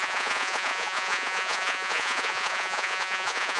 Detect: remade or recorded remade